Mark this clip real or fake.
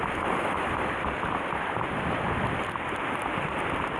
real